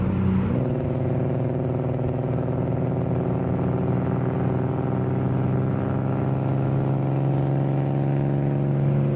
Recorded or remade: recorded